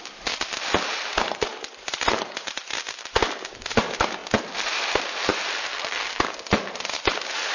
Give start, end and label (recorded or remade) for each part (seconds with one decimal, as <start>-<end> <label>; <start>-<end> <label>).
0.0-4.2 remade; 4.2-6.8 recorded; 6.8-7.5 remade